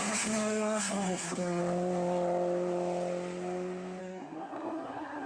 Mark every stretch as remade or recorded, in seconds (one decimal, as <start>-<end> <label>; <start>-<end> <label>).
0.0-1.6 remade; 1.6-4.0 recorded; 4.0-5.3 remade